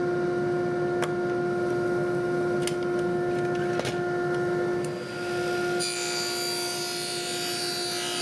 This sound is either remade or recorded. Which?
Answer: recorded